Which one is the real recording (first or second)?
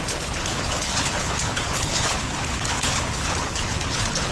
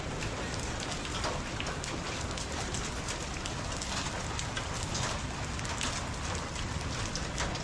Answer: second